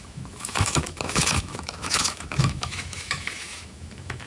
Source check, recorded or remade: remade